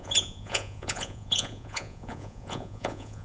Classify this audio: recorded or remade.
remade